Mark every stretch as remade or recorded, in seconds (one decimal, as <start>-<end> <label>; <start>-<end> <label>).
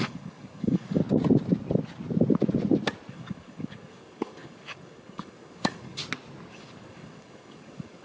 0.0-1.0 remade; 1.0-3.1 recorded; 3.1-6.0 remade; 6.0-6.5 recorded; 6.5-8.0 remade